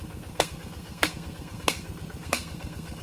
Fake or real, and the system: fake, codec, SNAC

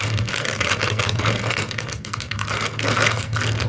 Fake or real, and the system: fake, codec, SNAC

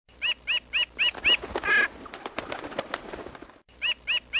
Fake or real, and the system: real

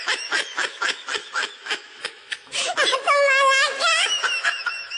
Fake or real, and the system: fake, autoencoder, DAC-VAE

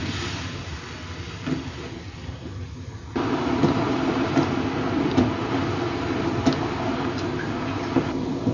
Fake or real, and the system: real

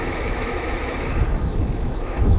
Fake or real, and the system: fake, autoencoder, DAC-VAE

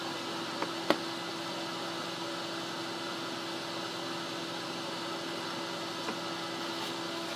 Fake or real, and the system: real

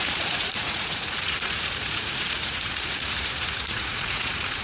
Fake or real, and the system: fake, vocoder, Vocos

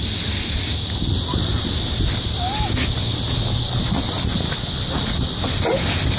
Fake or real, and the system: real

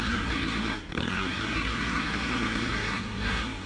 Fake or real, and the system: fake, codec, SNAC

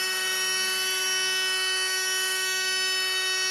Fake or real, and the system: fake, autoencoder, DAC-VAE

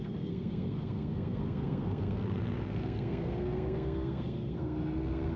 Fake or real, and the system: fake, codec, SNAC